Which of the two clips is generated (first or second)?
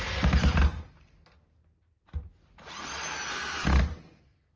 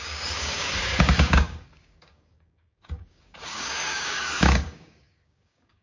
second